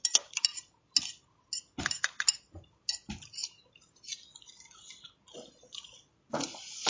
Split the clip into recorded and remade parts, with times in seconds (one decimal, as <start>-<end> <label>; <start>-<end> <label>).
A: 0.0-3.4 recorded; 3.4-3.9 remade; 3.9-6.9 recorded